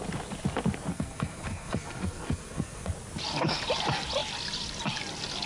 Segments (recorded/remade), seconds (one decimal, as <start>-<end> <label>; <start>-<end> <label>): 0.0-0.9 recorded; 0.9-2.9 remade; 2.9-5.5 recorded